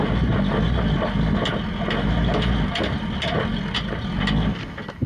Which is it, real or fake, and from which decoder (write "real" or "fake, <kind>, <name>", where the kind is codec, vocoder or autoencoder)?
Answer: real